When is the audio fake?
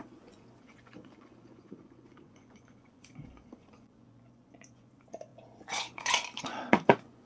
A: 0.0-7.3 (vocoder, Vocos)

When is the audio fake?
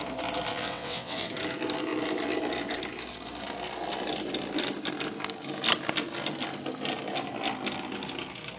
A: 0.5-1.3 (vocoder, WaveNeXt)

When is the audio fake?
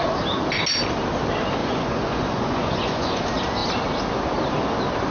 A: 1.6-3.2 (vocoder, Vocos)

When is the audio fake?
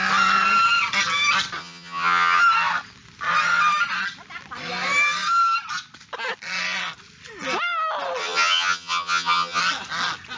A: 1.6-2.4 (vocoder, HiFi-GAN); 8.2-9.6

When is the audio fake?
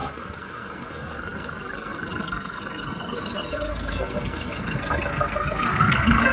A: 0.0-6.3 (codec, SNAC)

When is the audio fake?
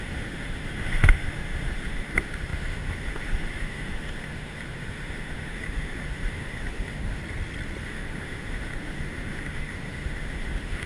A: 0.0-7.2 (autoencoder, DAC-VAE); 7.8-10.9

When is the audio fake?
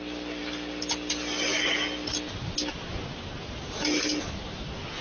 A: none